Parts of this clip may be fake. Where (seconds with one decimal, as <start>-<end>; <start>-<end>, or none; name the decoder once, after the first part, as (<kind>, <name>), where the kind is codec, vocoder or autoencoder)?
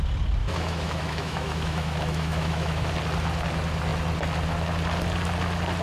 0.4-2.9 (autoencoder, DAC-VAE)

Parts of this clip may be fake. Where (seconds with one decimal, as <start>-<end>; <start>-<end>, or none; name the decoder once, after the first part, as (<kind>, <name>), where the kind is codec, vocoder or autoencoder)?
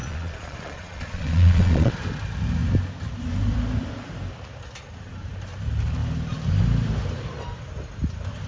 0.0-1.9 (vocoder, Vocos)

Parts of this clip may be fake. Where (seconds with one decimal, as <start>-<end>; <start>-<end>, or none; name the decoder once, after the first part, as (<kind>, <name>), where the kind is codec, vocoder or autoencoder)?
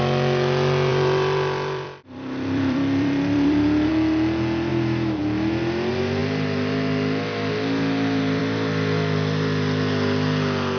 0.9-3.9 (vocoder, BigVGAN v2); 4.7-5.2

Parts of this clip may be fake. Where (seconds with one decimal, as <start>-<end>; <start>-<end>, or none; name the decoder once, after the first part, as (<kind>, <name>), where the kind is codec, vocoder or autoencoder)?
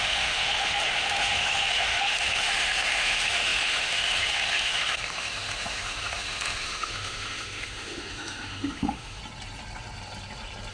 0.0-9.2 (autoencoder, DAC-VAE)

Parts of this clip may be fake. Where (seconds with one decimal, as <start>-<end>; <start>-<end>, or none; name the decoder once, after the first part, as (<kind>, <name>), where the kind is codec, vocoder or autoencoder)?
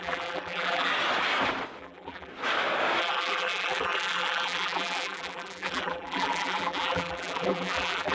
0.0-0.9 (vocoder, BigVGAN v2); 1.8-2.3; 3.0-8.1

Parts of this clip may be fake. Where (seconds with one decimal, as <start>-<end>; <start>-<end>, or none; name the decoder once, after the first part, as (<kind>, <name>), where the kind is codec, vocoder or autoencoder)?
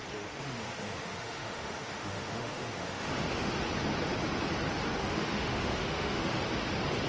0.0-3.5 (autoencoder, DAC-VAE); 5.0-6.4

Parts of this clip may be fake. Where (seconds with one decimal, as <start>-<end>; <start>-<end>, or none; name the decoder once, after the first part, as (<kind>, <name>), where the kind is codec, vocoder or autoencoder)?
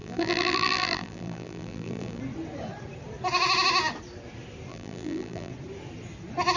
0.0-2.2 (vocoder, BigVGAN v2); 4.7-5.5